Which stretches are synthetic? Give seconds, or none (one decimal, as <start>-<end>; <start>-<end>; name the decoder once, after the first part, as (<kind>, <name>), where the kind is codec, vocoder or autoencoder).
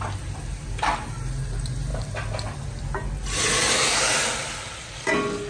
none